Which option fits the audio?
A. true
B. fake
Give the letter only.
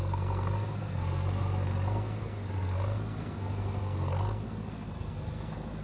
B